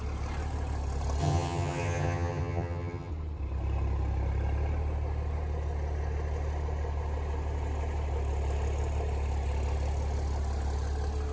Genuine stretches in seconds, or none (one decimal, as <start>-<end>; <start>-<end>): 0.0-1.2; 3.1-11.3